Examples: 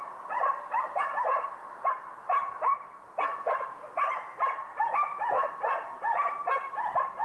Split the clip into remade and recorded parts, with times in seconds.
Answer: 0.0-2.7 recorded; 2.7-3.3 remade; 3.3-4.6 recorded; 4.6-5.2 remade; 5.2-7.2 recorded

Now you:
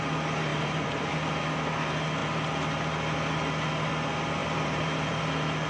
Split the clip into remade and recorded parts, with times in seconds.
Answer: 0.0-0.5 recorded; 0.5-1.1 remade; 1.1-4.4 recorded; 4.4-5.2 remade; 5.2-5.7 recorded

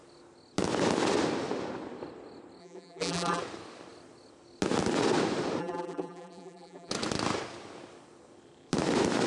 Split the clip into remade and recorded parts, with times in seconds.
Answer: 0.0-2.6 recorded; 2.6-3.4 remade; 3.4-5.6 recorded; 5.6-6.9 remade; 6.9-9.3 recorded

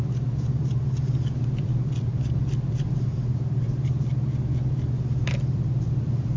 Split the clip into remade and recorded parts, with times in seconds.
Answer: 0.0-6.4 remade